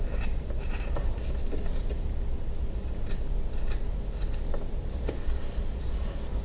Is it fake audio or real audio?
real